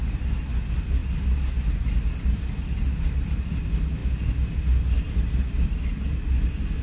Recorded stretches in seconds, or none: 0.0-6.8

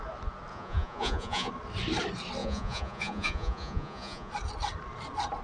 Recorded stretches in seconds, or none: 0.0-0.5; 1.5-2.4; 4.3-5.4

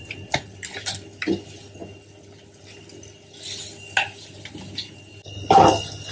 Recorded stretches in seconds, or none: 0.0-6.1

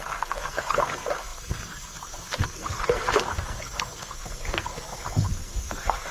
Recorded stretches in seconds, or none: none

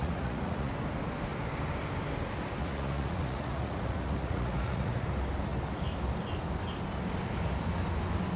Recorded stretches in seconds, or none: 0.7-2.6; 5.1-8.4

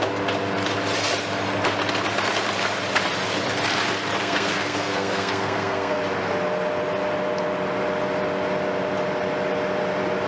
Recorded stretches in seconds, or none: 0.0-4.2; 6.0-10.3

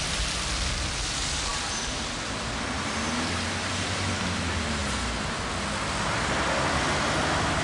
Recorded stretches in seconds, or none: 0.0-7.6

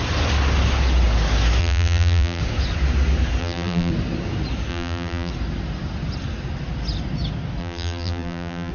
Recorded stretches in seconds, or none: 0.0-1.6; 2.4-3.4; 3.9-4.7; 5.3-7.6